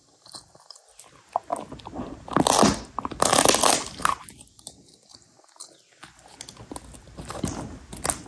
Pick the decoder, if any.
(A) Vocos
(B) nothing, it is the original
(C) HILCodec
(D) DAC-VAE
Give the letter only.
B